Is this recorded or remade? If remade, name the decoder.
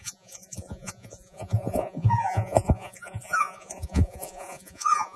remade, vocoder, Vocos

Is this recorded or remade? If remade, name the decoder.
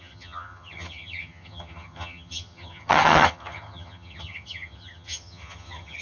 remade, vocoder, HiFi-GAN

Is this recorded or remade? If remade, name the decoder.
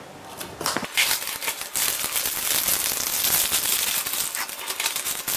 recorded